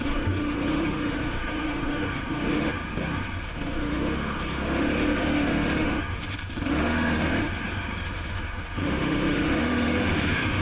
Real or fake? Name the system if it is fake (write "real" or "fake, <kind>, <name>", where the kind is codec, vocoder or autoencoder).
fake, autoencoder, DAC-VAE